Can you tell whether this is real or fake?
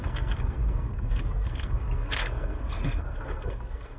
fake